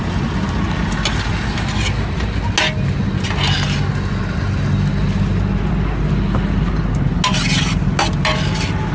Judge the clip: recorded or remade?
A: recorded